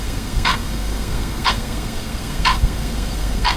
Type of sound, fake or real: fake